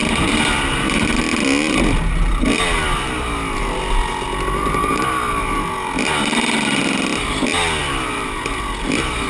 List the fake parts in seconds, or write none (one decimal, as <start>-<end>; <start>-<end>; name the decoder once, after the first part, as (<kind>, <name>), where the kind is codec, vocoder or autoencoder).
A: none